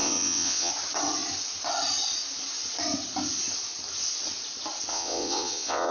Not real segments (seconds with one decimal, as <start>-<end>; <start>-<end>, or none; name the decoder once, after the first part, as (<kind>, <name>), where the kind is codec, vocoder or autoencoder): 0.0-0.7 (vocoder, WaveNeXt); 4.9-5.9